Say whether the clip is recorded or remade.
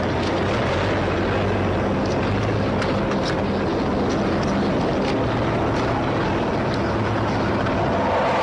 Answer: recorded